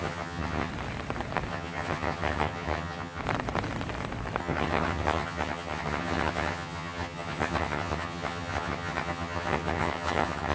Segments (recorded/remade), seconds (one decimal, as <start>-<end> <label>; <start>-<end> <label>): 0.0-0.7 remade; 0.7-1.5 recorded; 1.5-3.2 remade; 3.2-4.4 recorded; 4.4-10.5 remade